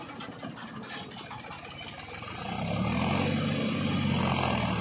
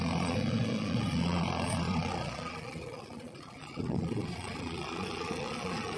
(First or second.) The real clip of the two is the first